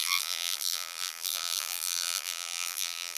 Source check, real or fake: fake